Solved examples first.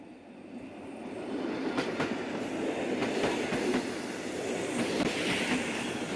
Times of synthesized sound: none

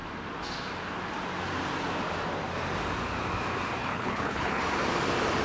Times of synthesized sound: 3.8-4.6